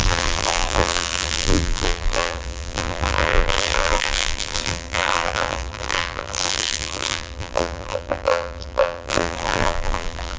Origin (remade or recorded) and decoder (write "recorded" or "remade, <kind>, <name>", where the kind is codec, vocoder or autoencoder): remade, vocoder, BigVGAN v2